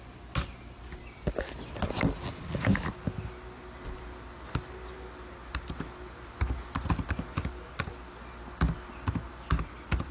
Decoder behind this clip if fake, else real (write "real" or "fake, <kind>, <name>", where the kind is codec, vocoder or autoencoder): real